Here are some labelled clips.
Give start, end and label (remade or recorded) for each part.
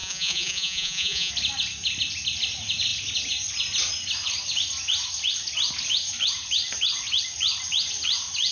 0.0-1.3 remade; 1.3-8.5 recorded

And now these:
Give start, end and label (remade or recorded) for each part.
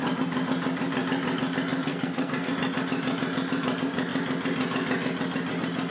0.0-1.9 recorded; 1.9-2.5 remade; 2.5-5.9 recorded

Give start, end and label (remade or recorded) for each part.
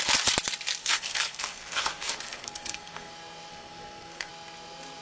0.0-0.8 recorded; 0.8-3.1 remade; 3.1-3.5 recorded; 3.5-4.3 remade; 4.3-5.0 recorded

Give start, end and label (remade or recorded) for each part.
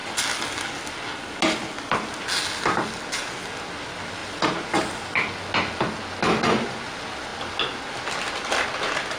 0.0-9.2 recorded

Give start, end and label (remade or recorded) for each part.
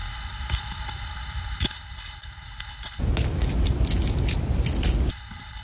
0.0-3.0 remade; 3.0-5.1 recorded; 5.1-5.6 remade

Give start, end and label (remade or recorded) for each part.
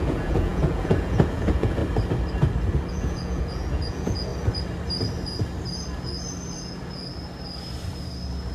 0.0-1.8 remade; 1.8-2.9 recorded; 2.9-4.3 remade; 4.3-6.6 recorded; 6.6-7.0 remade; 7.0-8.5 recorded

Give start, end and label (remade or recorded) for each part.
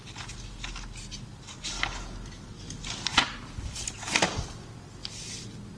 0.0-5.8 recorded